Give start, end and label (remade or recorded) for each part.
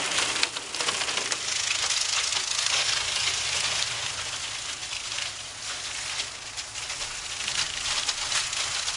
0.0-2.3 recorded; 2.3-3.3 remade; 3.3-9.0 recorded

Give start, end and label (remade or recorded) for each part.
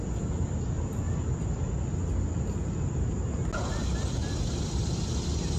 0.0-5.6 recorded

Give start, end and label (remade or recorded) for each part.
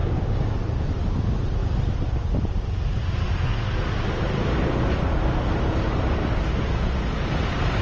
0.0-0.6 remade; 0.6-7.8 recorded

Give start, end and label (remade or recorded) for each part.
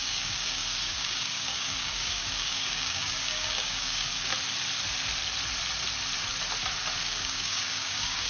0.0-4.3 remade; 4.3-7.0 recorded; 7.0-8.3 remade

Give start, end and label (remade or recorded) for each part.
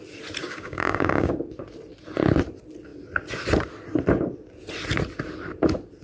0.0-0.4 recorded; 0.4-1.3 remade; 1.3-6.0 recorded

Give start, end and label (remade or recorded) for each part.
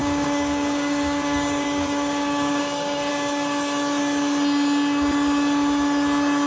0.0-3.1 remade; 3.1-6.5 recorded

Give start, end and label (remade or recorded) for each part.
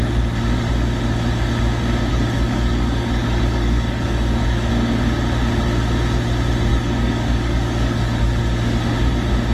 0.0-2.1 recorded; 2.1-4.7 remade; 4.7-6.7 recorded; 6.7-8.4 remade; 8.4-9.5 recorded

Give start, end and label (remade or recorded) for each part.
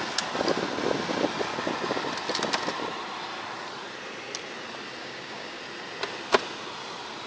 0.0-5.0 recorded; 5.0-5.6 remade; 5.6-7.3 recorded